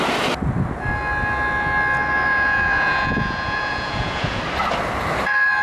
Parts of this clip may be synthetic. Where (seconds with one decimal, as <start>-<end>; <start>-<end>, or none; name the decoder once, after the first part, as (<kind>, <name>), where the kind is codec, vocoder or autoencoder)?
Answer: 2.3-4.4 (vocoder, Vocos)